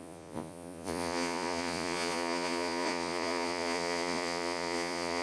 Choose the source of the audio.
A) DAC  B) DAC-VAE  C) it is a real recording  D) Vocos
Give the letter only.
D